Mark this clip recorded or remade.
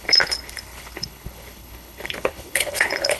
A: remade